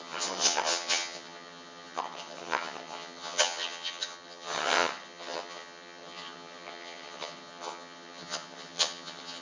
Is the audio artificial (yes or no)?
yes